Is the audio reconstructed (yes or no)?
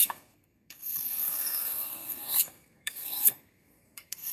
yes